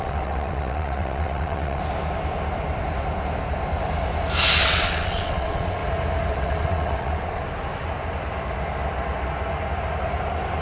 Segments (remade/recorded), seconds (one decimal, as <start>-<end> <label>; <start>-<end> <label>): 0.0-1.8 remade; 1.8-4.6 recorded; 4.6-5.8 remade; 5.8-6.3 recorded; 6.3-7.4 remade; 7.4-10.6 recorded